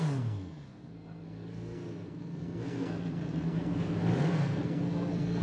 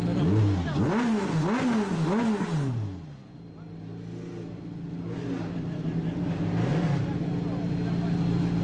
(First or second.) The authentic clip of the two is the second